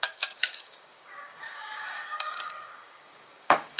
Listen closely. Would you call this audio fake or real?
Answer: fake